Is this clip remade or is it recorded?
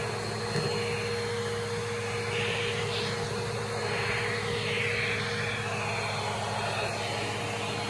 recorded